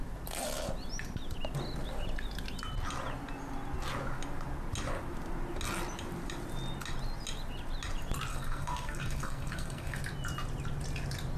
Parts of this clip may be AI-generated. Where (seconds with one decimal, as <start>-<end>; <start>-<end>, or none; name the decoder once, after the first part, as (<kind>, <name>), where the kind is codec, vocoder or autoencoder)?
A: 8.3-10.0 (codec, SNAC)